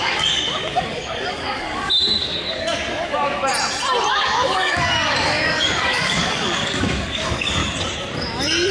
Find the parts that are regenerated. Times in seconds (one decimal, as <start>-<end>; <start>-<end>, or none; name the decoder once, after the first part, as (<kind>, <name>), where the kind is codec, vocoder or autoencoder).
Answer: 0.0-3.5 (codec, DAC); 4.1-7.6